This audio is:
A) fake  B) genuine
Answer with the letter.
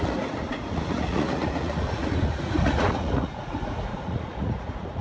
A